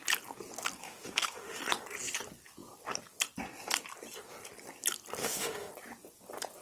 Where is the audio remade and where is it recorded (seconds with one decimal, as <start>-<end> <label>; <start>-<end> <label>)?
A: 0.0-0.8 recorded; 0.8-1.6 remade; 1.6-5.2 recorded; 5.2-5.7 remade; 5.7-6.6 recorded